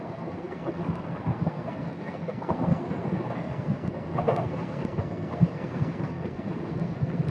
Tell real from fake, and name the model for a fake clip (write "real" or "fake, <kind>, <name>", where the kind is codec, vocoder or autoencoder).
fake, codec, SNAC